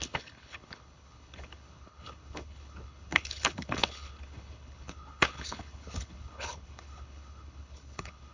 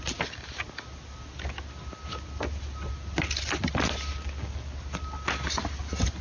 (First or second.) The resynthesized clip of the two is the first